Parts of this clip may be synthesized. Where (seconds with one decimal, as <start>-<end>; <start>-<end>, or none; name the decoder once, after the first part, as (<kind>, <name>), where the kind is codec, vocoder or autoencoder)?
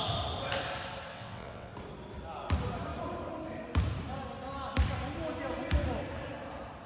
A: 1.1-1.7 (vocoder, WaveNeXt)